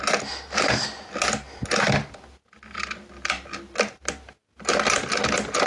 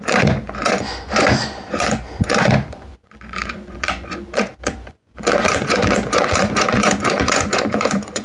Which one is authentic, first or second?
first